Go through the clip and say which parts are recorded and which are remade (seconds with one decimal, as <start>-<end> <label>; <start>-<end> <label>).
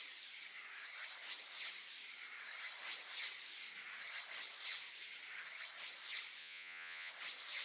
0.0-6.4 recorded; 6.4-7.1 remade; 7.1-7.6 recorded